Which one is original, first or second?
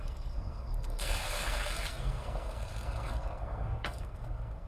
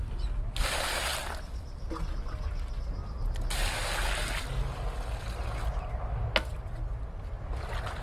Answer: second